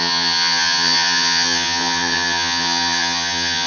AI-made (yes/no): yes